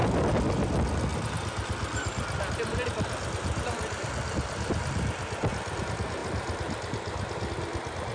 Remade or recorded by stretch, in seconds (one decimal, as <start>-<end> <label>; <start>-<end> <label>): 0.0-8.1 recorded